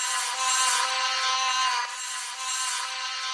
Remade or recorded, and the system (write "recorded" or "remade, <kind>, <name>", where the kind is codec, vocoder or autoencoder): recorded